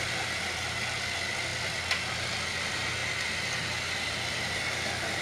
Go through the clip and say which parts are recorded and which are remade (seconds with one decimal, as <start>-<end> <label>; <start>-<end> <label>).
0.0-5.2 recorded